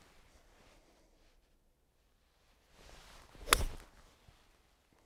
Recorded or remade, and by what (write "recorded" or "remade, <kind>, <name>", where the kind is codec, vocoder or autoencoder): recorded